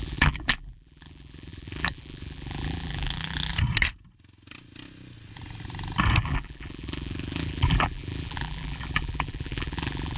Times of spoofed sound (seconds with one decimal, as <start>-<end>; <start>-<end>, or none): 0.0-3.5; 6.2-10.2